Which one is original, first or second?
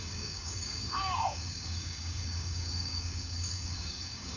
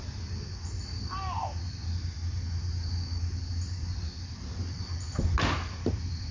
second